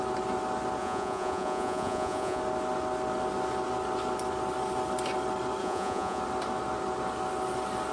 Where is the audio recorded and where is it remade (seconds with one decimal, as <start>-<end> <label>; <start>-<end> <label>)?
0.0-0.8 recorded; 0.8-2.4 remade; 2.4-5.6 recorded; 5.6-6.2 remade; 6.2-7.9 recorded

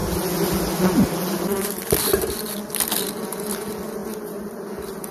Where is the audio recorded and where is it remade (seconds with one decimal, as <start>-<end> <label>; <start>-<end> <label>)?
0.0-4.0 recorded; 4.0-5.1 remade

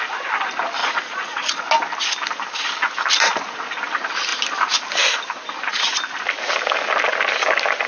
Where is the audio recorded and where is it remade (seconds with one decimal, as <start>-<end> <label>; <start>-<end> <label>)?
0.0-0.8 recorded; 0.8-1.6 remade; 1.6-7.9 recorded